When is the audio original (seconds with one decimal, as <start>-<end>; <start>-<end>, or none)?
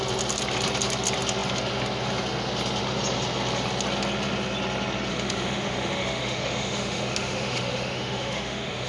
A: 0.0-5.1